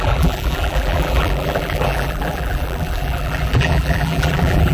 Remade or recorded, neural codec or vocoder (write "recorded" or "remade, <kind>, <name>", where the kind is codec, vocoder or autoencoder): remade, vocoder, BigVGAN v2